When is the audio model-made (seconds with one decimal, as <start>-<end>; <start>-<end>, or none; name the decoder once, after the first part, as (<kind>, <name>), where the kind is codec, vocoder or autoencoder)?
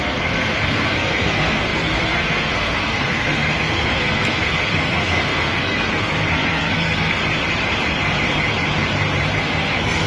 0.0-7.2 (codec, SNAC); 9.4-10.1